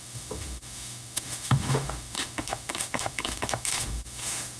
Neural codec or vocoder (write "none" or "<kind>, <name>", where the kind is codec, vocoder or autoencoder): autoencoder, DAC-VAE